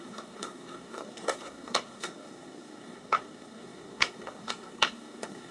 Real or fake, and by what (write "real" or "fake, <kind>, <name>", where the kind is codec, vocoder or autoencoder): fake, codec, SNAC